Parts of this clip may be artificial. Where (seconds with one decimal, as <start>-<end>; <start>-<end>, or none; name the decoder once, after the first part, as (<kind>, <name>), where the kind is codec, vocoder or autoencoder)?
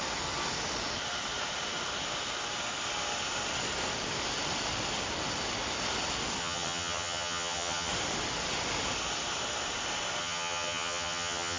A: 6.4-7.9 (vocoder, HiFi-GAN); 10.2-11.6